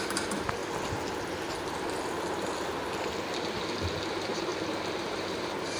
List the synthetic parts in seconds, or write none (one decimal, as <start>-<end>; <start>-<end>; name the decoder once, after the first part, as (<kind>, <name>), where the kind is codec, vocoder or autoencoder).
0.0-0.6 (vocoder, BigVGAN v2); 4.1-4.5; 5.0-5.8

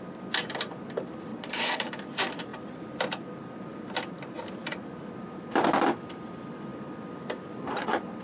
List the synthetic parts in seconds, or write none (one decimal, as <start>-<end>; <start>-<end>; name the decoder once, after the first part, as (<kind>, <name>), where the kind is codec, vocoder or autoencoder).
1.3-1.9 (vocoder, Vocos)